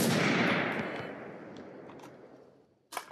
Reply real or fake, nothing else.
real